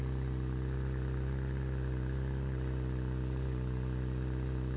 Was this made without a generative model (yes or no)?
yes